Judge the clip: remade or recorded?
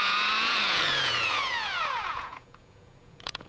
remade